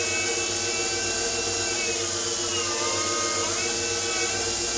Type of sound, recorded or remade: recorded